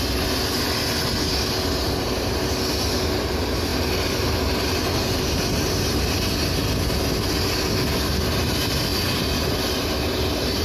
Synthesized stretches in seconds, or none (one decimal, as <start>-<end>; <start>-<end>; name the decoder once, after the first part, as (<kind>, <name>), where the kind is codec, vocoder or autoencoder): none